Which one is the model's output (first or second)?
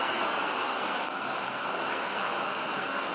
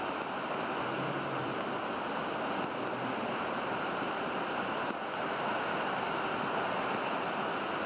first